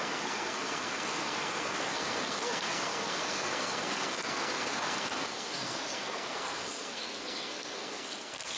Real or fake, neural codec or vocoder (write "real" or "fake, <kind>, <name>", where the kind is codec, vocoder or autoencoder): fake, codec, SNAC